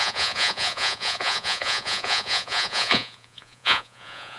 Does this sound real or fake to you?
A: fake